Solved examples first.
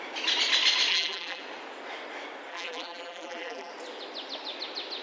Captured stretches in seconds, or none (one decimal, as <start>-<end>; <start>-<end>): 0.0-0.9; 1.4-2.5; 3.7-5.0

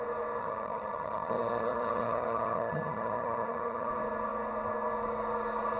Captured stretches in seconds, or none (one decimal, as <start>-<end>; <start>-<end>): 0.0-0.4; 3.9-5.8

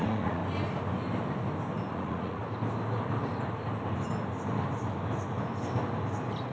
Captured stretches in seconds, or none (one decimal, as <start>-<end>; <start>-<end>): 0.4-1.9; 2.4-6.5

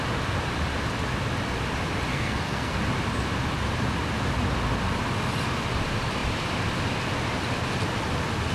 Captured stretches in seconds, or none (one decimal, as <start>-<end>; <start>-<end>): 0.0-2.1; 2.8-8.5